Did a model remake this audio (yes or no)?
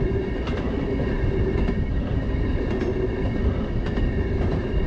no